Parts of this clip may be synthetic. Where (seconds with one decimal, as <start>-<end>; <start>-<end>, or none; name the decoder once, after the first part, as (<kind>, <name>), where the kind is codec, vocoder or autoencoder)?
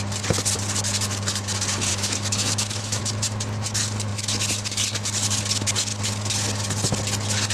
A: 1.9-3.0 (autoencoder, DAC-VAE)